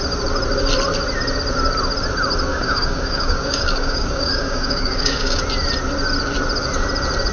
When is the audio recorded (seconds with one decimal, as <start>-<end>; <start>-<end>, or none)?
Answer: 0.0-2.5; 5.4-7.3